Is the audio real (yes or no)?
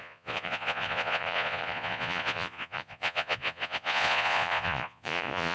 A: no